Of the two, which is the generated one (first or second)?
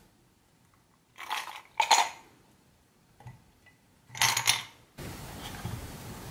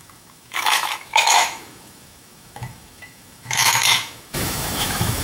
second